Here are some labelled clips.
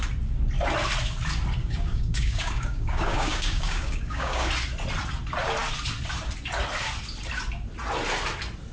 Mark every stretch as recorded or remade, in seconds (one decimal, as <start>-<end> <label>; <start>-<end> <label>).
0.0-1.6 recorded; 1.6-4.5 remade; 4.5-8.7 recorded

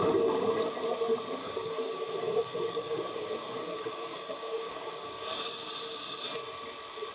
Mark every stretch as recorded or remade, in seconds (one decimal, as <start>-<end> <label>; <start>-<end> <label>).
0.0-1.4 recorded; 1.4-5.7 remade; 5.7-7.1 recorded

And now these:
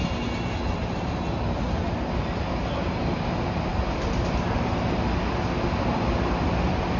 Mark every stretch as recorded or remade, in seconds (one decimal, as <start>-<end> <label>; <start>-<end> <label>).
0.0-7.0 recorded